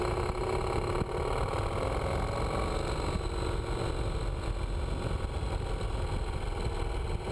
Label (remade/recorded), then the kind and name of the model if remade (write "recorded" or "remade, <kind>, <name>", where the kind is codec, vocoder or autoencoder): recorded